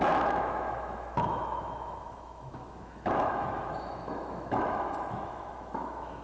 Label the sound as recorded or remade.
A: remade